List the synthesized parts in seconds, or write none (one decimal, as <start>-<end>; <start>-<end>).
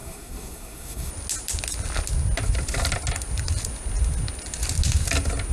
0.0-1.1